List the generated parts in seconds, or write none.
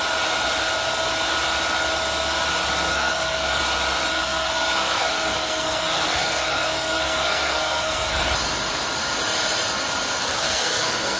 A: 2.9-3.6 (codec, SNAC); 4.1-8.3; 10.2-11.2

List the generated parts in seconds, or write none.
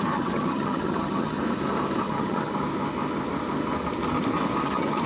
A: 0.0-1.4 (vocoder, HiFi-GAN); 2.0-2.5; 4.6-5.1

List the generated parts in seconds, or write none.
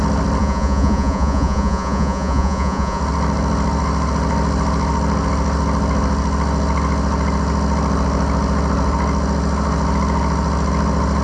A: 0.4-3.0 (vocoder, Vocos)